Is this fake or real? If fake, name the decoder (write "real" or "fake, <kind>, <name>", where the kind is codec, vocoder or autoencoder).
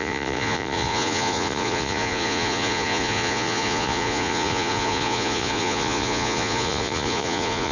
fake, vocoder, Vocos